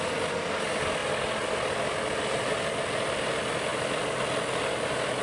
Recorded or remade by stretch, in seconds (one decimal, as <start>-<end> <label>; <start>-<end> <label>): 0.0-5.2 recorded